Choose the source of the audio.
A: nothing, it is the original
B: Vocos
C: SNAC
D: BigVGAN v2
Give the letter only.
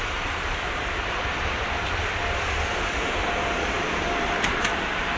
D